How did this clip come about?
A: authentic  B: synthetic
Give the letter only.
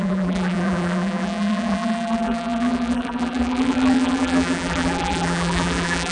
B